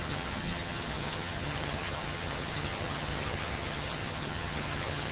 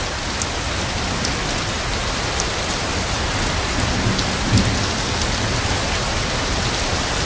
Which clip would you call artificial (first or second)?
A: first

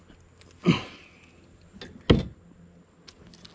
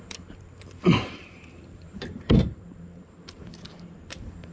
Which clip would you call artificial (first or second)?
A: second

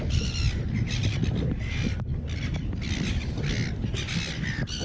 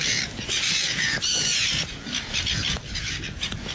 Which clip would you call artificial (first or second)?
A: second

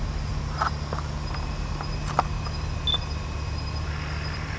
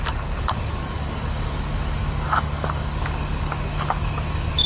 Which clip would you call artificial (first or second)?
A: second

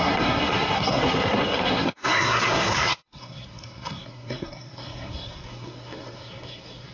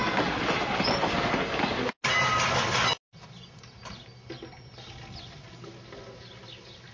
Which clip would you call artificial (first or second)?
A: first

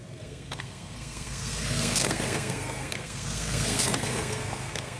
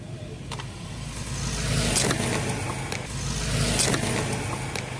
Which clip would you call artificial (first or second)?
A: first